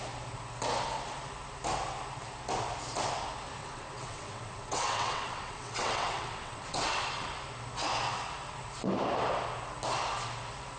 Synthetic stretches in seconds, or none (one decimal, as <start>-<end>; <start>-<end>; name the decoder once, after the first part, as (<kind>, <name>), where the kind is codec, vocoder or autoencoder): 3.6-7.0 (vocoder, WaveNeXt)